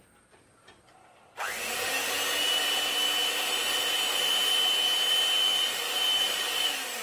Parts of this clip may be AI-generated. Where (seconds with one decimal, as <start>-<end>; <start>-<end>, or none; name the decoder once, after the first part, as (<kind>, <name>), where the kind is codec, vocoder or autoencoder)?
none